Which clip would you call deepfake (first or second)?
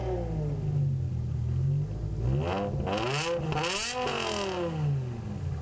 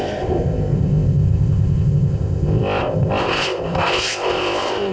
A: second